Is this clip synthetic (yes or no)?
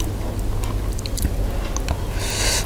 no